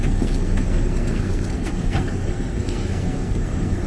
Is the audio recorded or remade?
remade